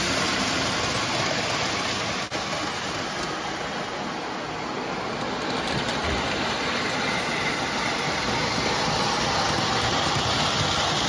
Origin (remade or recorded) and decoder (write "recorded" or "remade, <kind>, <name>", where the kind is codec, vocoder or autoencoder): recorded